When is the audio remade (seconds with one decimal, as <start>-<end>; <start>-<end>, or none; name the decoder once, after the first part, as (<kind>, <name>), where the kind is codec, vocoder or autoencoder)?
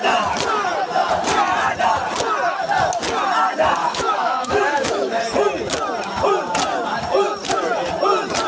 3.8-5.2 (autoencoder, DAC-VAE)